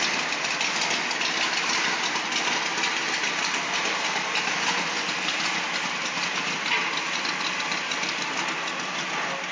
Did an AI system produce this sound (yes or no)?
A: no